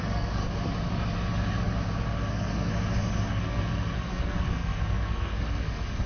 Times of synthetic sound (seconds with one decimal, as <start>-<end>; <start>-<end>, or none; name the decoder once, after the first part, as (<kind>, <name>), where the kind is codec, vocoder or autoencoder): 0.0-0.4 (codec, SNAC); 2.3-2.7; 3.3-6.1